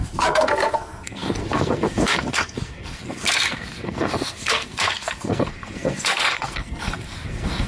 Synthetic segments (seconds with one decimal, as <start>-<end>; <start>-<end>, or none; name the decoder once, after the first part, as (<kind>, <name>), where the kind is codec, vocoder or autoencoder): 0.0-7.7 (codec, SNAC)